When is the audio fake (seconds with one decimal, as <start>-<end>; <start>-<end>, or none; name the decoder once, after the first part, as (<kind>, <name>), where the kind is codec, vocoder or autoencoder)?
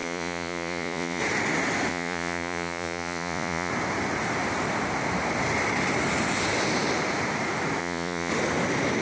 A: 0.0-1.2 (vocoder, Vocos); 1.9-3.7; 7.8-8.3